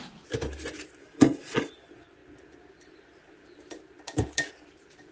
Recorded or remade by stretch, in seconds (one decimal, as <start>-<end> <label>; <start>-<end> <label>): 0.0-1.0 recorded; 1.0-1.7 remade; 1.7-5.1 recorded